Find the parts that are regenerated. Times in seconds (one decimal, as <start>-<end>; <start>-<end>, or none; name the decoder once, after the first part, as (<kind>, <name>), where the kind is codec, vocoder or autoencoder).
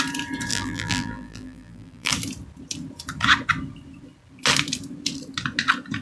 0.5-2.1 (vocoder, BigVGAN v2)